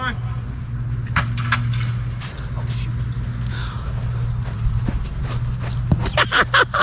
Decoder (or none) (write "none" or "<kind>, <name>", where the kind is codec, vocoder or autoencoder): none